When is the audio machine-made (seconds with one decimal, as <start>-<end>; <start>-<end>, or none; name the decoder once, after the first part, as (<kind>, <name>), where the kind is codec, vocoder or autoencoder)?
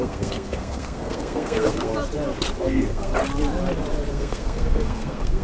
0.0-1.9 (codec, SNAC); 2.6-3.1; 4.1-5.4